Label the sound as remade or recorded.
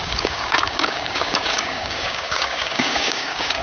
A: remade